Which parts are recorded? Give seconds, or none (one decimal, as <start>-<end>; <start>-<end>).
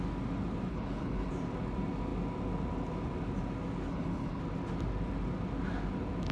0.0-0.7; 1.3-3.9; 4.4-6.3